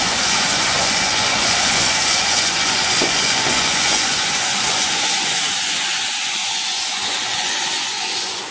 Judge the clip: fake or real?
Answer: fake